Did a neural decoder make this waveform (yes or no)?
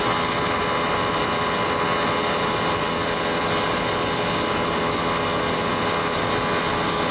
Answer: no